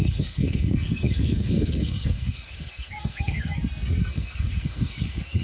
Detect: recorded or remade remade